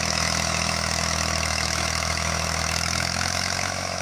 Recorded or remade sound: remade